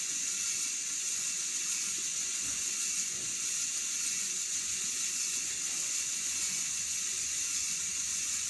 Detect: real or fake fake